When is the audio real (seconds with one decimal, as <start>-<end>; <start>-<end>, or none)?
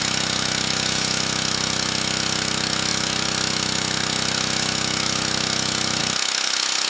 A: none